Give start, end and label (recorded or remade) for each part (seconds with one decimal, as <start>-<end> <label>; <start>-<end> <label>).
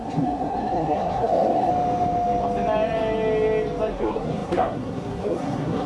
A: 0.0-1.7 remade; 1.7-3.9 recorded; 3.9-5.9 remade